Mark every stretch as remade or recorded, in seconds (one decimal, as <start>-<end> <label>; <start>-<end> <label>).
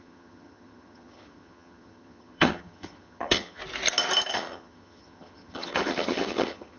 0.0-3.6 remade; 3.6-4.3 recorded; 4.3-6.8 remade